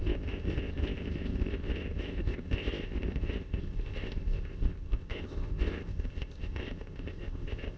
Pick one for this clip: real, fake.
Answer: fake